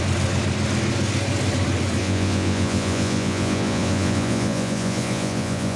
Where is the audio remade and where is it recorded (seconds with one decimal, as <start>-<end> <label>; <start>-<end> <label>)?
0.0-2.0 recorded; 2.0-5.8 remade